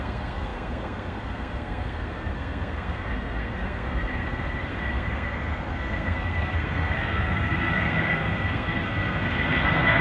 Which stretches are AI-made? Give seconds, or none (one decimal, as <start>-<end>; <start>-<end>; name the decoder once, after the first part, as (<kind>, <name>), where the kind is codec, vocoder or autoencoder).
0.0-10.0 (codec, SNAC)